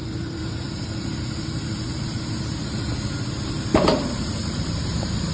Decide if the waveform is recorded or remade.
remade